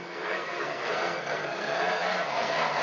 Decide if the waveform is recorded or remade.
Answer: remade